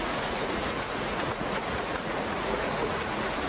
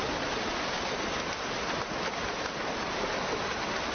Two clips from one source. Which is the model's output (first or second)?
first